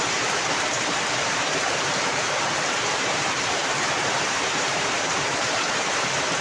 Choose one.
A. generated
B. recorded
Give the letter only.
A